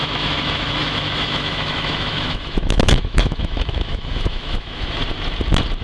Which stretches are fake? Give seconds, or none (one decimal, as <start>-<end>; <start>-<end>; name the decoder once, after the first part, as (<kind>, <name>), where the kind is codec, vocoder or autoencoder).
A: 0.0-5.0 (autoencoder, DAC-VAE)